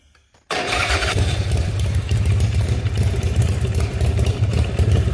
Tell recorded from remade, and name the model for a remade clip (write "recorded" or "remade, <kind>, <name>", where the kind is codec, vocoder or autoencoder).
remade, vocoder, BigVGAN v2